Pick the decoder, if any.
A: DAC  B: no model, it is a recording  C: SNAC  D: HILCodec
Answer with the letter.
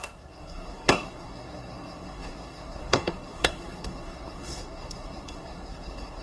C